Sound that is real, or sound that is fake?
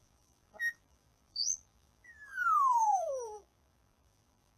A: fake